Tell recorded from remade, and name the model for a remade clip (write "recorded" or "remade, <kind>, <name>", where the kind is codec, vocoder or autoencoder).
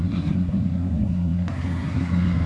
remade, codec, SNAC